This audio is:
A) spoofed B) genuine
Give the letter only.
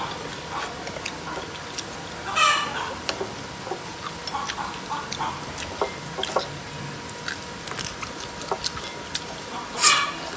B